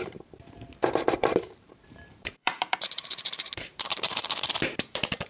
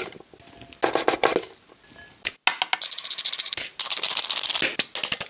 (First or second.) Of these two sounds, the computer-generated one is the first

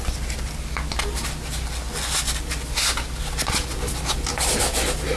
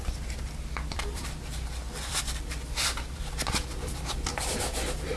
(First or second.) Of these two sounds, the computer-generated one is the second